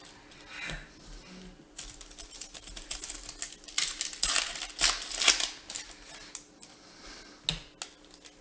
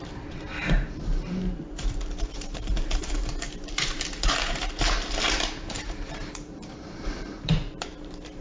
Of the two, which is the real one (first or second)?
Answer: first